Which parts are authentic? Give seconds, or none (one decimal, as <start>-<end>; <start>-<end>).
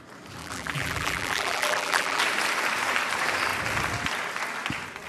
0.0-0.4; 2.2-5.1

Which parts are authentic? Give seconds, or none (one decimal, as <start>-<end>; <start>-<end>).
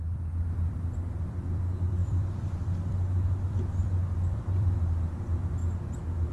5.6-6.3